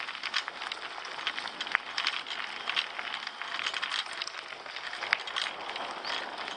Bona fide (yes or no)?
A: yes